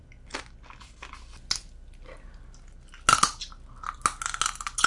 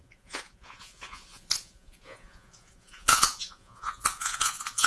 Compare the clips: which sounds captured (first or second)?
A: first